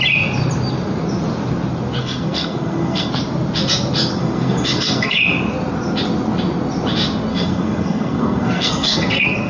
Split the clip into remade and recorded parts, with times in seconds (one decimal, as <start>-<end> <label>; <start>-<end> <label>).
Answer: 0.0-2.0 recorded; 2.0-3.1 remade; 3.1-4.2 recorded; 4.2-5.2 remade; 5.2-7.3 recorded; 7.3-9.5 remade